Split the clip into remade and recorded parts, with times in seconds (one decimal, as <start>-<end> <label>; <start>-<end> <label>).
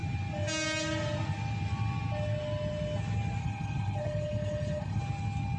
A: 0.0-3.4 recorded; 3.4-5.0 remade; 5.0-5.6 recorded